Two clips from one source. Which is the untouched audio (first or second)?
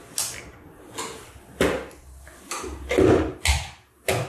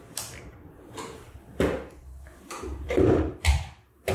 first